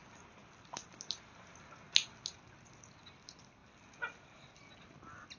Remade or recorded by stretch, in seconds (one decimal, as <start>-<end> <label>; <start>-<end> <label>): 0.0-3.6 recorded; 3.6-4.7 remade; 4.7-5.4 recorded